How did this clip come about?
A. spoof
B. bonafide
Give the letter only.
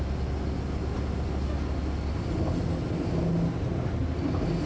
B